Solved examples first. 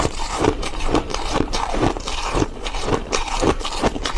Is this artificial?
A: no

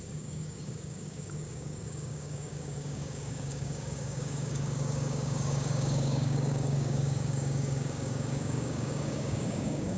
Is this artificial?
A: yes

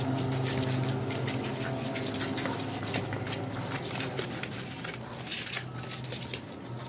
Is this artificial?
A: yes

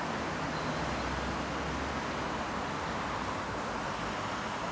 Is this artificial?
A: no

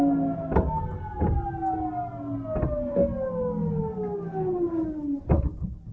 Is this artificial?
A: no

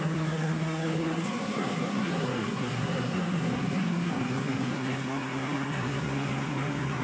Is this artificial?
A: yes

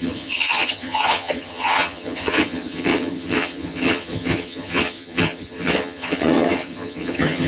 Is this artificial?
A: yes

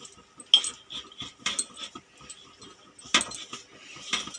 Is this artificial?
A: no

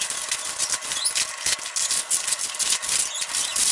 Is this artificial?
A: no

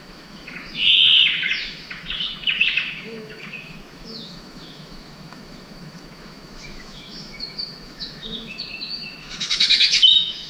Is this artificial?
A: yes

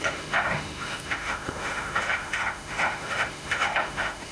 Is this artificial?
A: yes